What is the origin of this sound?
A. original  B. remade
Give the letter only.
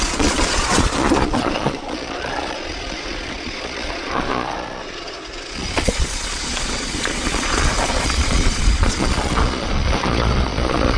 B